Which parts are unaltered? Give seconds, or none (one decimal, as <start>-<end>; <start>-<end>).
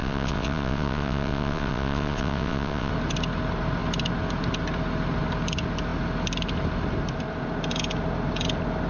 2.9-8.9